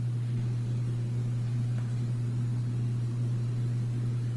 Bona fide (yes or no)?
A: yes